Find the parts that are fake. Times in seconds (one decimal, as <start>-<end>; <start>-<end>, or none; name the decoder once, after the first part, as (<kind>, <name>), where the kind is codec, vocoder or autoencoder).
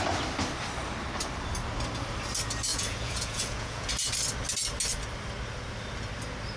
2.7-3.9 (vocoder, Vocos)